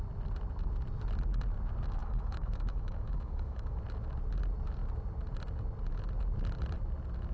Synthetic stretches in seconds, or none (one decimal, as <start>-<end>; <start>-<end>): 2.0-3.8